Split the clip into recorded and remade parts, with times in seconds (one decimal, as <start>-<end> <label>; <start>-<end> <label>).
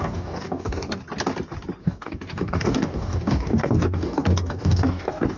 0.0-1.0 remade; 1.0-1.8 recorded; 1.8-5.4 remade